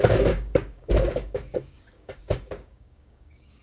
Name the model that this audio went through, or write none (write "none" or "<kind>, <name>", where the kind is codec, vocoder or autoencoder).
codec, DAC